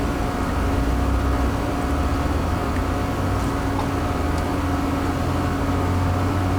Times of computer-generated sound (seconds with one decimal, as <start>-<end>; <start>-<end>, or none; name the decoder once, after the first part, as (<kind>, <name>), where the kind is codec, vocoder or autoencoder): 2.1-2.7 (vocoder, BigVGAN v2)